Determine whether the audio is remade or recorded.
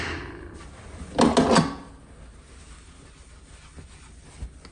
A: recorded